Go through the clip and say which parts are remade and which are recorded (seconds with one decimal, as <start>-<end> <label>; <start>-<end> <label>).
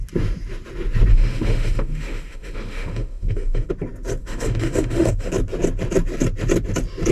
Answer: 0.0-1.1 recorded; 1.1-3.7 remade; 3.7-4.2 recorded; 4.2-5.3 remade; 5.3-7.1 recorded